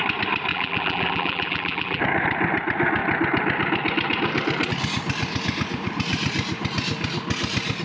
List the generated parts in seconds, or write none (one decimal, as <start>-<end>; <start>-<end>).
0.5-2.0